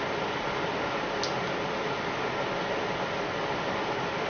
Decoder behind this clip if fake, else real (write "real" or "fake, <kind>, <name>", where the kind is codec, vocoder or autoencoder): real